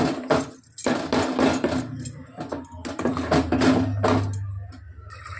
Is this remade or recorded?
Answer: recorded